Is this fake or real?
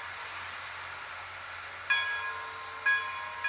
real